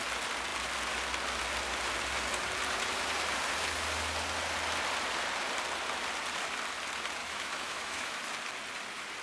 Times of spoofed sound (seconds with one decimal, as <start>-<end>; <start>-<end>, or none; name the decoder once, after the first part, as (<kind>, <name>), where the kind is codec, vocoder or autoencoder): 7.2-8.2 (autoencoder, DAC-VAE)